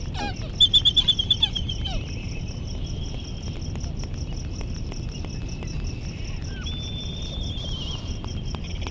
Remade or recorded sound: recorded